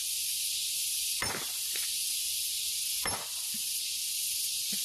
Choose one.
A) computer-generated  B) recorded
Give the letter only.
B